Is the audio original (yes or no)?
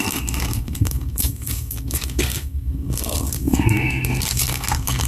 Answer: no